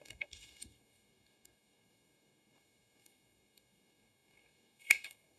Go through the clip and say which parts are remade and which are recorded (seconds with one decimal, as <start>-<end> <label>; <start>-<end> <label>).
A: 0.0-5.4 remade